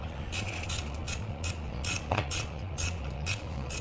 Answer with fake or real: fake